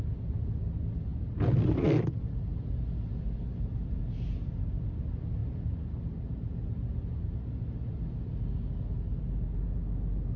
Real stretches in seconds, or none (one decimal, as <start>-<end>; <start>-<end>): 0.0-10.4